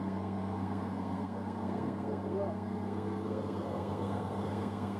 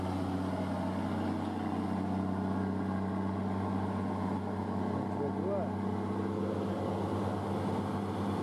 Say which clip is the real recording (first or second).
second